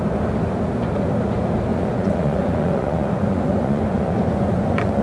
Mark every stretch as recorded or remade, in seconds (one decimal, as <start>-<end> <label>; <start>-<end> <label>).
0.0-1.7 recorded; 1.7-5.0 remade